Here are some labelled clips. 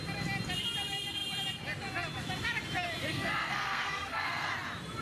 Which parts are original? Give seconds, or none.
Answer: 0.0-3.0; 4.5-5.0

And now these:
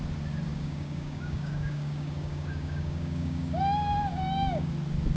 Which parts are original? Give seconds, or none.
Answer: 0.0-0.5; 3.6-4.1; 4.7-5.2

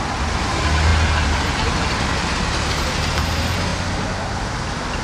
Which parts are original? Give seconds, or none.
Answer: 0.0-5.0

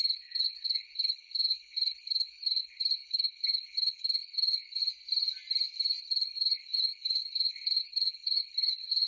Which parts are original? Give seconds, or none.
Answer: 4.8-6.0

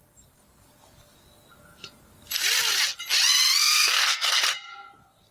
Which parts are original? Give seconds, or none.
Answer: 0.0-3.6; 4.4-5.3